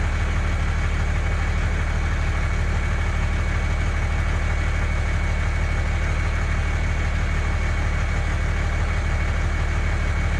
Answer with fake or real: real